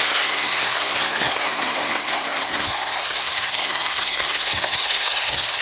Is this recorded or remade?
remade